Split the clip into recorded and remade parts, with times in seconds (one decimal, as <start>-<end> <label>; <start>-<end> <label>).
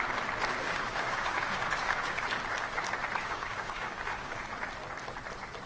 0.0-0.6 recorded; 0.6-2.2 remade; 2.2-3.2 recorded; 3.2-4.4 remade; 4.4-5.7 recorded